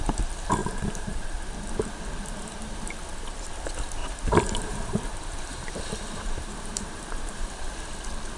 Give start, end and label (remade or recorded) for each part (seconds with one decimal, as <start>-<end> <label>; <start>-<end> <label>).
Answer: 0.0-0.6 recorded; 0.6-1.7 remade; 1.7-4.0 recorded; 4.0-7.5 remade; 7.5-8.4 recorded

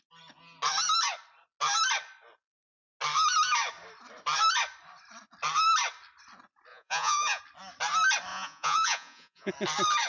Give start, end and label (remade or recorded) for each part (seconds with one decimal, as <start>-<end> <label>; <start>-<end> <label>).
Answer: 0.0-6.7 recorded; 6.7-7.4 remade; 7.4-8.3 recorded; 8.3-9.5 remade; 9.5-10.1 recorded

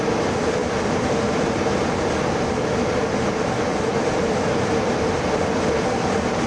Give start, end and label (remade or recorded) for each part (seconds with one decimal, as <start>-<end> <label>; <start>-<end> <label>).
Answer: 0.0-0.6 recorded; 0.6-2.1 remade; 2.1-3.7 recorded; 3.7-6.5 remade